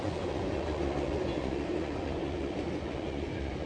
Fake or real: fake